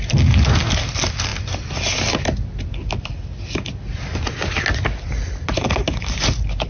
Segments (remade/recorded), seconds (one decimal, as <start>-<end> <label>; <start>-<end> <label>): 0.0-6.7 recorded